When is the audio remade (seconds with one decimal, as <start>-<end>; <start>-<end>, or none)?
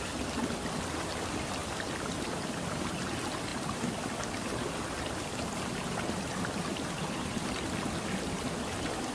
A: none